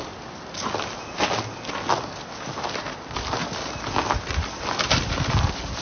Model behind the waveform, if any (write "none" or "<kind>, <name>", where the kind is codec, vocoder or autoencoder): none